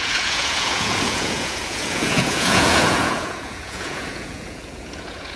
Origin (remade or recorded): remade